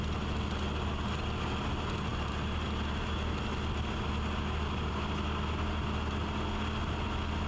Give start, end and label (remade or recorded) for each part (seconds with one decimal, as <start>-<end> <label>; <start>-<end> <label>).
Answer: 0.0-7.5 recorded